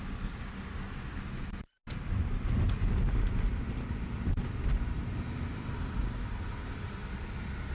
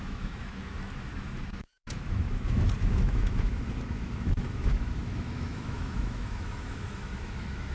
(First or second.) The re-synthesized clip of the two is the second